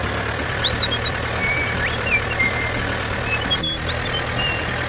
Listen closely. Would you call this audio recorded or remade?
remade